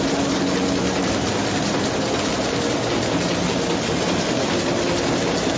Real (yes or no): yes